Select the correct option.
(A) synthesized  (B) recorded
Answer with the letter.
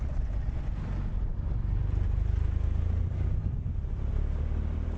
B